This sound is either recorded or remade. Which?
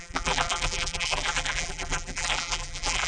remade